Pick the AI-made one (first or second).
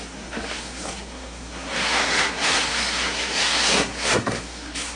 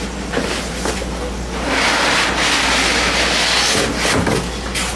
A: first